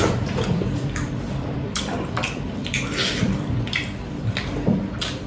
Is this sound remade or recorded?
remade